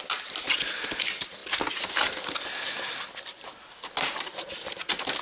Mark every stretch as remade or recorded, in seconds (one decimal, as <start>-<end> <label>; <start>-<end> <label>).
0.0-5.2 recorded